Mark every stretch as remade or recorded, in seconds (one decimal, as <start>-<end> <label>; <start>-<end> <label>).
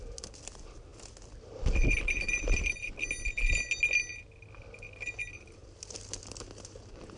0.0-7.2 recorded